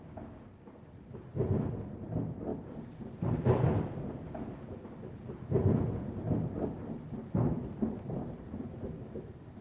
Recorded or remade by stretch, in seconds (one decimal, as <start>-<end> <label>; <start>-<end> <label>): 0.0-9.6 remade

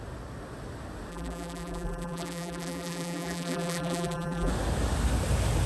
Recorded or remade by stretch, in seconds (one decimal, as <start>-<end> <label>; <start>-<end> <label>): 0.0-1.1 recorded; 1.1-4.5 remade; 4.5-5.7 recorded

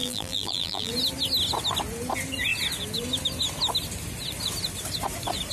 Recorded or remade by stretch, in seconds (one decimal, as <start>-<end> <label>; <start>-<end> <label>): 0.0-0.9 remade; 0.9-5.5 recorded

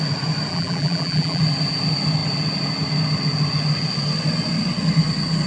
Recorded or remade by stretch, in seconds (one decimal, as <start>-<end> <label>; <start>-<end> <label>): 0.0-0.5 recorded; 0.5-1.4 remade; 1.4-5.5 recorded

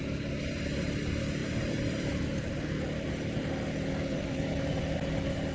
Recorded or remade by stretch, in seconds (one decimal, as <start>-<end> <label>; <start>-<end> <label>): 0.0-1.4 recorded; 1.4-2.2 remade; 2.2-4.1 recorded; 4.1-4.8 remade; 4.8-5.5 recorded

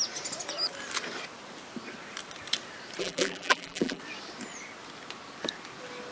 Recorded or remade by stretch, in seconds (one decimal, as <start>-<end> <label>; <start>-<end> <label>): 0.0-3.0 recorded; 3.0-4.0 remade; 4.0-6.1 recorded

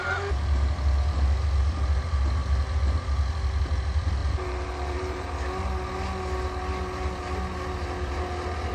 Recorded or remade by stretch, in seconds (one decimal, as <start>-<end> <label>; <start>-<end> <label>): 0.0-4.2 recorded; 4.2-5.3 remade; 5.3-8.7 recorded